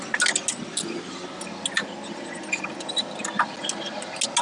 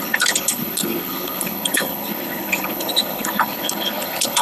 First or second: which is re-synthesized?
second